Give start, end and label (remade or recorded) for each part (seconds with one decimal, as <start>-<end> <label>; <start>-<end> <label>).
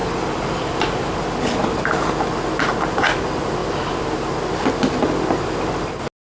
0.0-0.8 remade; 0.8-3.6 recorded; 3.6-4.2 remade; 4.2-6.2 recorded